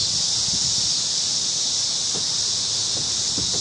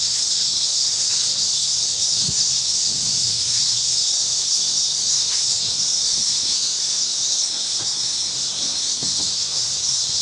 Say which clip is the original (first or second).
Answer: first